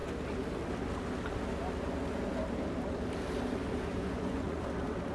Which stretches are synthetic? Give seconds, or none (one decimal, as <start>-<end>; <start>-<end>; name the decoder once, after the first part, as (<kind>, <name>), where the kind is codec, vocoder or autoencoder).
3.9-4.6 (vocoder, Vocos)